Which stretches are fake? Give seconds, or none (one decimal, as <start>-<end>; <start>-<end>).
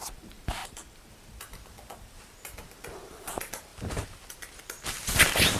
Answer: 0.6-1.1